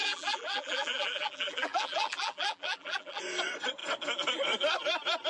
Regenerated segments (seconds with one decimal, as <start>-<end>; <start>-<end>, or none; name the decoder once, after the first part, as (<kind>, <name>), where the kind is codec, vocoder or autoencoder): 0.0-3.2 (vocoder, BigVGAN v2)